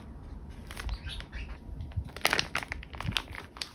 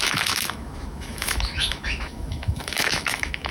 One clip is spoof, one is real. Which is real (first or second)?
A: first